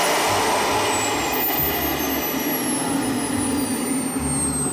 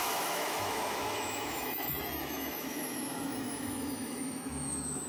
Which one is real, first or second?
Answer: first